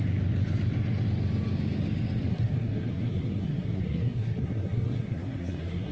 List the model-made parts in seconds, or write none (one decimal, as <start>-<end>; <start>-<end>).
2.3-5.9